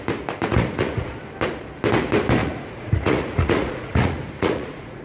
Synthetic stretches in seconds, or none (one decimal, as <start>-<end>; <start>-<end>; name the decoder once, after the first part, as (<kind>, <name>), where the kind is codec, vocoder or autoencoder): 0.5-1.1 (vocoder, Vocos); 2.4-5.0